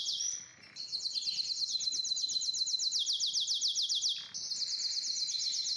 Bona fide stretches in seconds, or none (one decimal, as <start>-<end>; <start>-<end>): 0.0-5.8